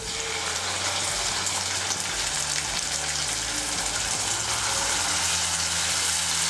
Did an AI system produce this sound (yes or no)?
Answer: no